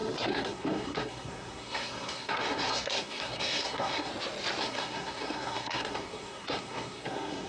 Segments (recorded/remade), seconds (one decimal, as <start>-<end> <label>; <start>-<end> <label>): 0.0-4.1 remade; 4.1-4.6 recorded; 4.6-7.5 remade